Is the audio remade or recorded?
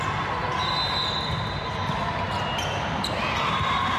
recorded